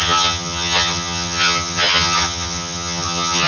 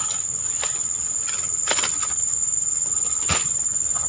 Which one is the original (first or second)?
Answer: second